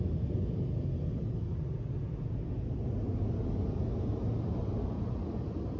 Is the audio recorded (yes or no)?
yes